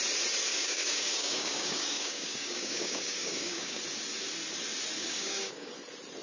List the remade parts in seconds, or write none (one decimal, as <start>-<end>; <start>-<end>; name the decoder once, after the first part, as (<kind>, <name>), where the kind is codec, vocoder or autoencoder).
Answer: 0.5-3.8 (codec, DAC); 5.0-5.7